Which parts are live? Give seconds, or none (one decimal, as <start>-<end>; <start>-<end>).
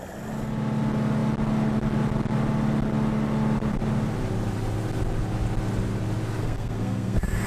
0.0-6.4